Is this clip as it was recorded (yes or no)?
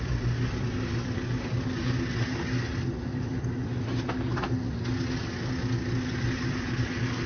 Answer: yes